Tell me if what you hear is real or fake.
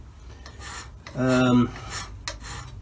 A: real